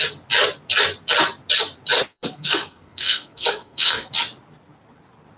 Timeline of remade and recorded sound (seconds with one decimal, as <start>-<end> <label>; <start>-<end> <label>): 0.0-2.1 recorded; 2.1-4.1 remade; 4.1-5.4 recorded